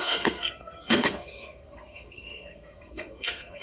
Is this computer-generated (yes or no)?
yes